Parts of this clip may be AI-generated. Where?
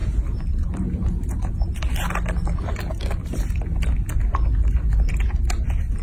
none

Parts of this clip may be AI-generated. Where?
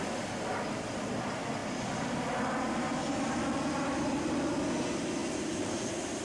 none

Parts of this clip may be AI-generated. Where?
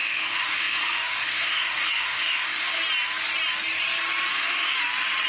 0.0-2.8 (autoencoder, DAC-VAE); 4.3-4.8